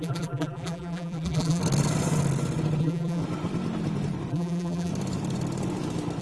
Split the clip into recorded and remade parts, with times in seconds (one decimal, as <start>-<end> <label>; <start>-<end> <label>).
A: 0.0-1.6 remade; 1.6-2.8 recorded; 2.8-3.2 remade; 3.2-4.3 recorded; 4.3-4.9 remade; 4.9-6.2 recorded

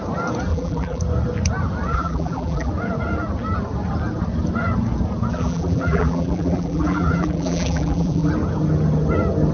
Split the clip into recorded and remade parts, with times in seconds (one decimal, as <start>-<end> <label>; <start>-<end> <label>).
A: 0.0-0.5 recorded; 0.5-1.0 remade; 1.0-1.9 recorded; 1.9-2.7 remade; 2.7-5.3 recorded; 5.3-8.3 remade; 8.3-9.5 recorded

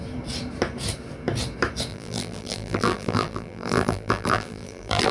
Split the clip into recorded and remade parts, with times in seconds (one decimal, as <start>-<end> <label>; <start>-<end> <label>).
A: 0.0-1.9 recorded; 1.9-5.1 remade

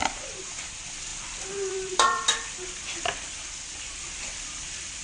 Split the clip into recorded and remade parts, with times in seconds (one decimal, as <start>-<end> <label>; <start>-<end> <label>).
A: 0.0-5.0 remade

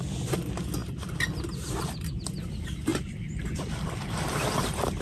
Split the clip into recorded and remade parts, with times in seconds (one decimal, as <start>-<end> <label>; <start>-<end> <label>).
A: 0.0-2.9 recorded; 2.9-5.0 remade

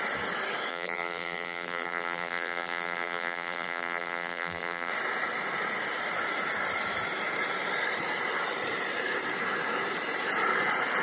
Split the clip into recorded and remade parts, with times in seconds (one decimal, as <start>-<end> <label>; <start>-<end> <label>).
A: 0.0-0.7 recorded; 0.7-4.9 remade; 4.9-11.0 recorded

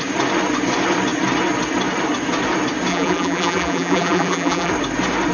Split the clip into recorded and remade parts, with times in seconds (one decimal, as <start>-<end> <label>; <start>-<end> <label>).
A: 0.0-2.9 recorded; 2.9-4.7 remade; 4.7-5.3 recorded